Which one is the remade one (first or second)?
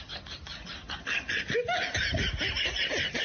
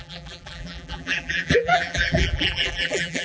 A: second